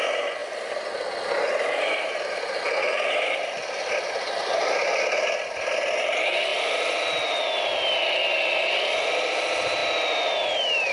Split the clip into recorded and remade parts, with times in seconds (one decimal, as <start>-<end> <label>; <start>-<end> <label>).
0.0-0.4 recorded; 0.4-4.1 remade; 4.1-10.9 recorded